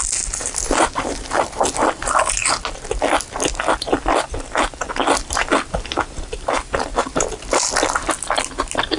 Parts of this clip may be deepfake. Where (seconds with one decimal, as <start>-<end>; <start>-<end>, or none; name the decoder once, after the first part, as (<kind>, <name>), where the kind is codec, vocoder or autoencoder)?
none